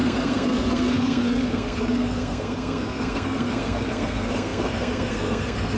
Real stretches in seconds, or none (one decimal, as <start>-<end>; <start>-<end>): none